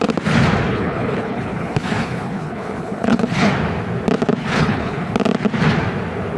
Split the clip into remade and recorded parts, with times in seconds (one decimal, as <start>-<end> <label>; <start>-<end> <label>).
0.0-0.7 recorded; 0.7-3.5 remade; 3.5-4.4 recorded; 4.4-5.1 remade; 5.1-6.4 recorded